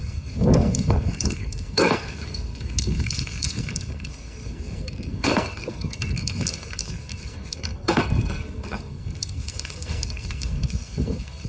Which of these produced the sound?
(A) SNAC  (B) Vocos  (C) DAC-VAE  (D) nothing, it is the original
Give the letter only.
A